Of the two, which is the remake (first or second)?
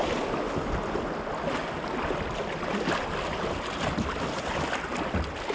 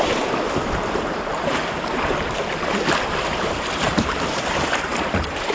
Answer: second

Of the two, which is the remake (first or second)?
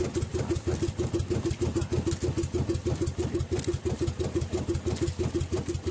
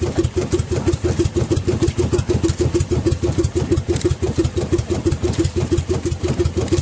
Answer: second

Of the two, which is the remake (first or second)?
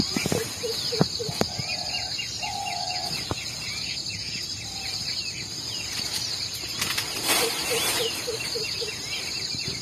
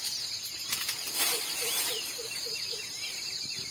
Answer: second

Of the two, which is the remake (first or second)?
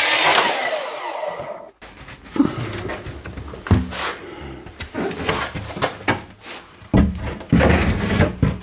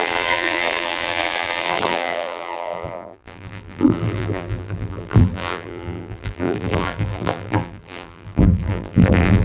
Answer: second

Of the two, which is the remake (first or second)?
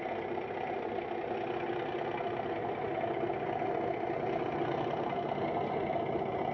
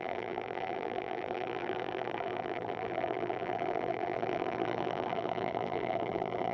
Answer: second